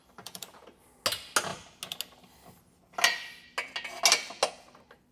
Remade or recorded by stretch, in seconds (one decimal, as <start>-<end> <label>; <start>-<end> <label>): 0.0-0.7 remade; 0.7-5.1 recorded